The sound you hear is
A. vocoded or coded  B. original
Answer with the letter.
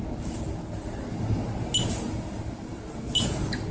B